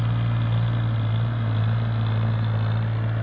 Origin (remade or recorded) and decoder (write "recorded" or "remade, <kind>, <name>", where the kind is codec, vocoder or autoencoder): recorded